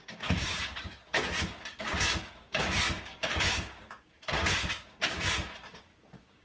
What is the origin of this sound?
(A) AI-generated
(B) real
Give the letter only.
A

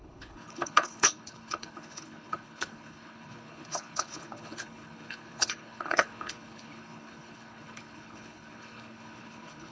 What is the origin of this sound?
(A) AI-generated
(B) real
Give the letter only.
A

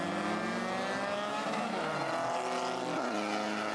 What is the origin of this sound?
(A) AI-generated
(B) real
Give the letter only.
B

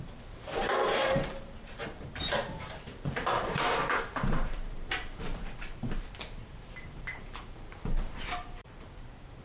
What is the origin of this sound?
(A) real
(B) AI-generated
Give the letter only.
B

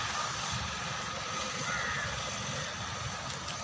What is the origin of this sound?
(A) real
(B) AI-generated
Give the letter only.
A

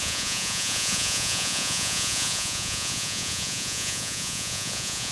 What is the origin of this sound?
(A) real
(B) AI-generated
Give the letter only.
B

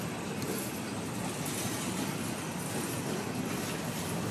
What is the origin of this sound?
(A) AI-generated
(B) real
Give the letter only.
B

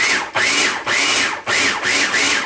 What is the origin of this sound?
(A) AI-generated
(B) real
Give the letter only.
B